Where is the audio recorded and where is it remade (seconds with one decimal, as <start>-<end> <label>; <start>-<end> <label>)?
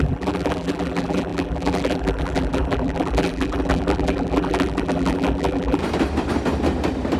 0.0-5.8 remade; 5.8-7.2 recorded